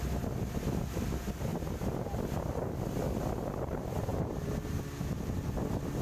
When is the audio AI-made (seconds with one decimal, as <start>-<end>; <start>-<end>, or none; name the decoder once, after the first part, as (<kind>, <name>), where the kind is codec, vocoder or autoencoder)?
1.5-3.2 (vocoder, BigVGAN v2); 4.1-4.8